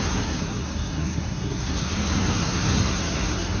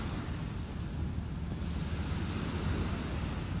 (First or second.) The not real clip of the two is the first